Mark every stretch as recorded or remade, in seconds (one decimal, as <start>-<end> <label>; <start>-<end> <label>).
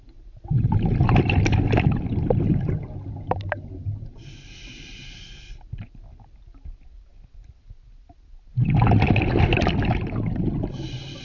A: 0.0-11.2 recorded